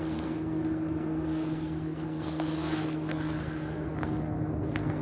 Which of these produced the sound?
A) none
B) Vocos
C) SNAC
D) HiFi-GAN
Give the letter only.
C